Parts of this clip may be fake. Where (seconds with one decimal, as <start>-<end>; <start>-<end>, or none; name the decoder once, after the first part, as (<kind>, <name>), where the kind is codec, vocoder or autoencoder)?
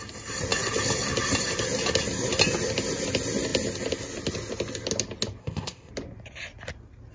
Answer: 5.4-5.9 (codec, ZipCodec)